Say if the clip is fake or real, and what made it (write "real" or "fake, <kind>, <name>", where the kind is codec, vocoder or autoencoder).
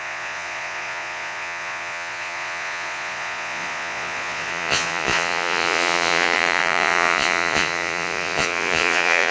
fake, vocoder, Vocos